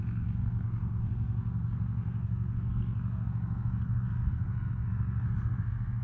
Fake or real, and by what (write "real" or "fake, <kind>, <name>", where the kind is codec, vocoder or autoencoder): fake, codec, SNAC